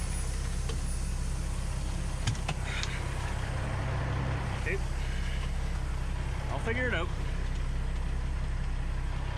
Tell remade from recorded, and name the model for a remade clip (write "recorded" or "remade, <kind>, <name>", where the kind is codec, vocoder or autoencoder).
recorded